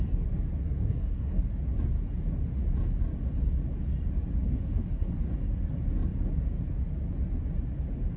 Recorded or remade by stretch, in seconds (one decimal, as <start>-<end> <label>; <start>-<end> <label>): 0.0-0.6 recorded; 0.6-1.4 remade; 1.4-4.5 recorded; 4.5-5.1 remade; 5.1-8.2 recorded